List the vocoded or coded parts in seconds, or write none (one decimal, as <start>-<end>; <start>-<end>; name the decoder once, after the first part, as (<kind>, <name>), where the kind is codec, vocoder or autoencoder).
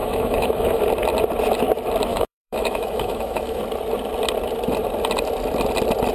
0.0-0.8 (autoencoder, DAC-VAE); 2.1-3.6